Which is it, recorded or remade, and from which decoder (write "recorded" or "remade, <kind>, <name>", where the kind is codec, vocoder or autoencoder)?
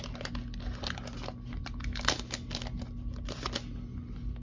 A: recorded